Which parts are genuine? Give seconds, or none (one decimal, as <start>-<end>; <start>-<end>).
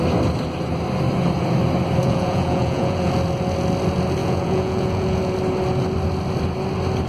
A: 0.0-2.0; 3.1-4.2; 5.2-7.1